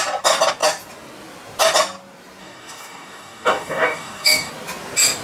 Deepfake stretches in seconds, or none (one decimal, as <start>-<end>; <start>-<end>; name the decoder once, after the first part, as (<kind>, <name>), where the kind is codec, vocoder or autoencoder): 2.4-4.5 (codec, DAC)